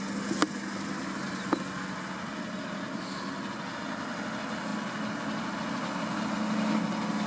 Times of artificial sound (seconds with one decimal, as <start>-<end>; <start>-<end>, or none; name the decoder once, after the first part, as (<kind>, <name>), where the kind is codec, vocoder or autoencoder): none